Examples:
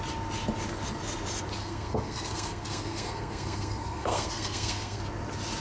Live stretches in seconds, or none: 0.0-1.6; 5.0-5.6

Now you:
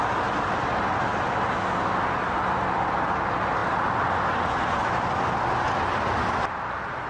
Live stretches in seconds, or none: 0.0-7.1

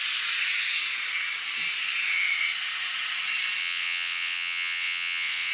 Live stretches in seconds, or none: 0.0-3.6

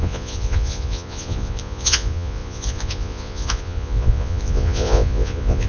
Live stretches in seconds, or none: none